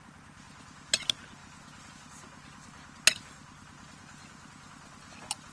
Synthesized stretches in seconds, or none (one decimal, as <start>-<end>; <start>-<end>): none